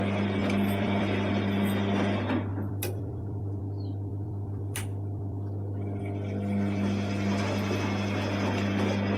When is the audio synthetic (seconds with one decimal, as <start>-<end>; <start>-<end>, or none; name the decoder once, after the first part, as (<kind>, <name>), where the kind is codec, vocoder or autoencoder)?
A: 0.4-1.3 (vocoder, BigVGAN v2); 2.5-3.6; 4.1-6.0